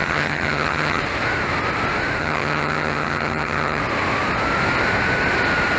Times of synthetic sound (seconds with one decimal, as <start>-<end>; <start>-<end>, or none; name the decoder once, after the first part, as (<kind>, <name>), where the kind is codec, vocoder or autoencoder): 0.0-1.0 (vocoder, HiFi-GAN); 2.2-3.8